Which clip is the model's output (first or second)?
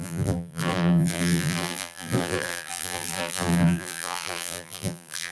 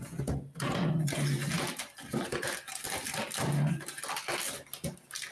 first